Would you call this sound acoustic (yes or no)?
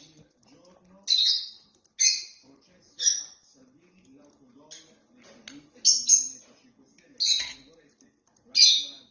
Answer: yes